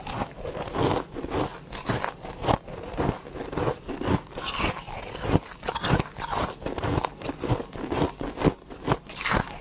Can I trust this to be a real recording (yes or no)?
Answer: yes